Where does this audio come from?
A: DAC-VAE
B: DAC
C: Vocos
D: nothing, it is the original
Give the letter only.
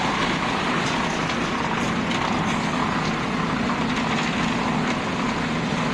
D